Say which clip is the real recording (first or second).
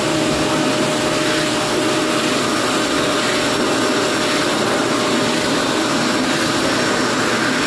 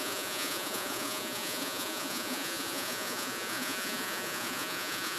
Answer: first